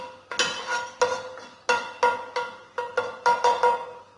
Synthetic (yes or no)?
no